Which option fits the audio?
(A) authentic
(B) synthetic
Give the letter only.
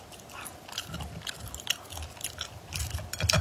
A